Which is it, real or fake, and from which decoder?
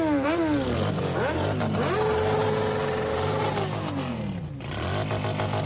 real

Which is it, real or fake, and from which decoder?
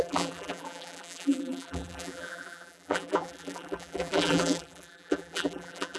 fake, vocoder, BigVGAN v2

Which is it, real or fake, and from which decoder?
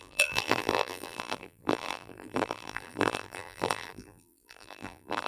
fake, vocoder, BigVGAN v2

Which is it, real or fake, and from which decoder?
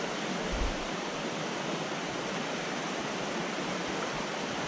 fake, vocoder, BigVGAN v2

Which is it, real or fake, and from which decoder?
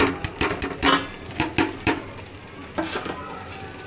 real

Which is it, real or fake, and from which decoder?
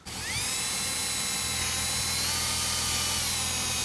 real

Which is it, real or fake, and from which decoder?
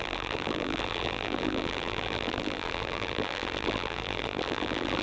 fake, vocoder, BigVGAN v2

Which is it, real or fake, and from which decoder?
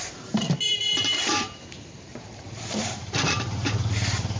fake, vocoder, BigVGAN v2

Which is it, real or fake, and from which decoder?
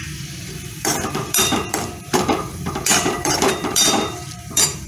fake, vocoder, BigVGAN v2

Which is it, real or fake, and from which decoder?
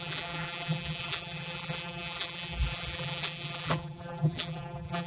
fake, vocoder, BigVGAN v2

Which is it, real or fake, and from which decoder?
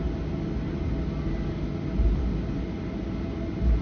real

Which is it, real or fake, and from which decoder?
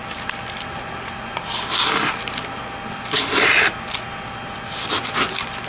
real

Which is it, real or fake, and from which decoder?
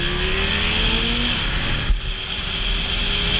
real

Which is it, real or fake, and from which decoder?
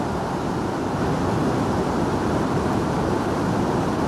real